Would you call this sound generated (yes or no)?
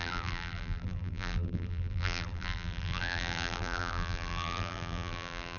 yes